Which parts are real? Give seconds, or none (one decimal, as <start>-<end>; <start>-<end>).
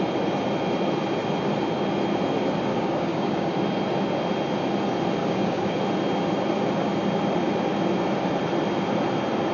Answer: 0.0-2.7; 3.5-5.2; 5.8-9.5